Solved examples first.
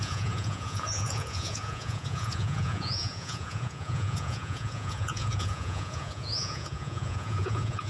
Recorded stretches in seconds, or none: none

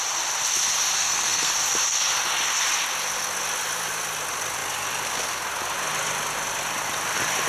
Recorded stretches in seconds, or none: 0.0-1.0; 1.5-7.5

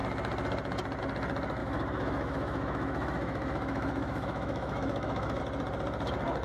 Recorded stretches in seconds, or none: 0.0-1.6; 5.4-6.4

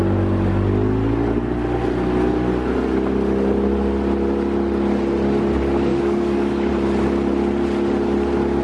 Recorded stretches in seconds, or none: 0.0-5.9; 6.7-8.6

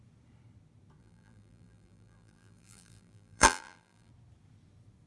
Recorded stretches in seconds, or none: 0.0-1.0; 4.1-5.1

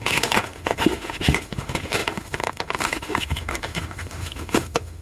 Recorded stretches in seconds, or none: none

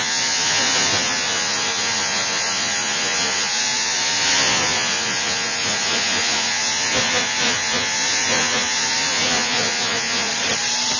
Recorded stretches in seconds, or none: 10.3-11.0